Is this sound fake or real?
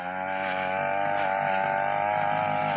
real